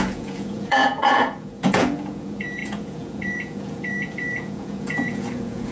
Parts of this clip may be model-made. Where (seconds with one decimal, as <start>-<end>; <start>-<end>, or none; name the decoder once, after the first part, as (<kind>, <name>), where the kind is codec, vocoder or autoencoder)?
0.0-5.7 (vocoder, Vocos)